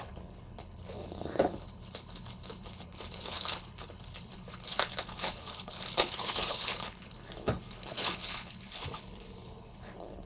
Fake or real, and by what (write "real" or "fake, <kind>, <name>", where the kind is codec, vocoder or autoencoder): fake, codec, HILCodec